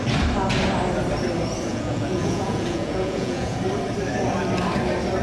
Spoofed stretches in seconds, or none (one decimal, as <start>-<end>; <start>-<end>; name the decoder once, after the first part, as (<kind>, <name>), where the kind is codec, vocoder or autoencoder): 1.7-3.6 (vocoder, Vocos)